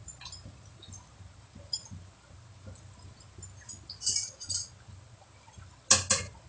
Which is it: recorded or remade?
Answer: recorded